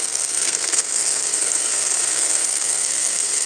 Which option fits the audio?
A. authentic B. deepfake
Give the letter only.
B